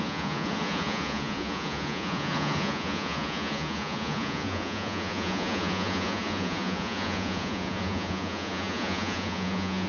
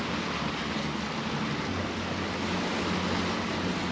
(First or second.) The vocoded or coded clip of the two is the first